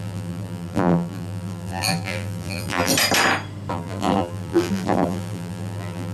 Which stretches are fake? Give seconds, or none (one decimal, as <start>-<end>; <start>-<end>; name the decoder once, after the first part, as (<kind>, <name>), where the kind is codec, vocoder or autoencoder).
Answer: 0.0-2.9 (vocoder, BigVGAN v2); 3.7-6.1

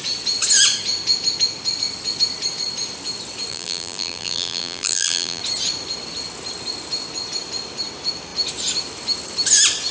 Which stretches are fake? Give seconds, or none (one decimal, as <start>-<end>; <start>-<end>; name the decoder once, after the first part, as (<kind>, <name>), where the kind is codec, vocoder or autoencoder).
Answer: 3.5-5.4 (vocoder, BigVGAN v2)

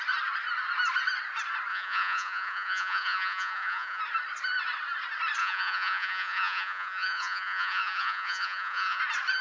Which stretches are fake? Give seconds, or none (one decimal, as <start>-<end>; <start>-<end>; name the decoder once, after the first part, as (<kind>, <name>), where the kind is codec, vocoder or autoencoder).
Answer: 1.7-4.0 (vocoder, Vocos); 5.4-9.0

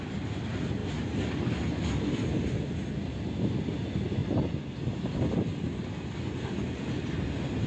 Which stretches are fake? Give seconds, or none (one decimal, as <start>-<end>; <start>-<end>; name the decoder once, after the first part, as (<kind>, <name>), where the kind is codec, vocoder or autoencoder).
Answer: none

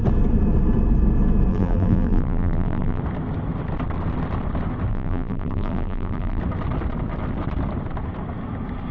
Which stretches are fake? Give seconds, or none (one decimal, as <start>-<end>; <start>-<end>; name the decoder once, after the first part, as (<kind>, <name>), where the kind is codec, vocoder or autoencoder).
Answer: 1.5-3.0 (vocoder, BigVGAN v2); 4.9-6.4

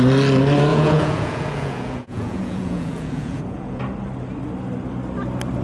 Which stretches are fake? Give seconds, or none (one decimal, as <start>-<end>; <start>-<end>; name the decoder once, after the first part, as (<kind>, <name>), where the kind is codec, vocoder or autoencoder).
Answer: 0.7-3.8 (vocoder, Vocos)

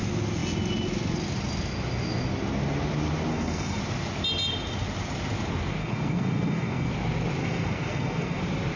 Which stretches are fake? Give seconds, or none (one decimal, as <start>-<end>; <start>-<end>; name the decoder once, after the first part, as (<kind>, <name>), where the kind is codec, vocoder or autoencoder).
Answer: 3.3-3.8 (codec, SNAC); 5.8-6.9; 7.4-8.4